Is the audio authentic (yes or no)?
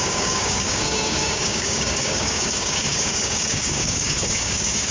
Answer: no